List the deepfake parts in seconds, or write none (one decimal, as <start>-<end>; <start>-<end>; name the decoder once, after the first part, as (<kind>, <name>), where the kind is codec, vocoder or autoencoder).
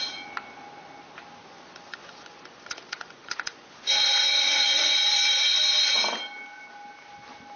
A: 1.4-6.0 (vocoder, Vocos)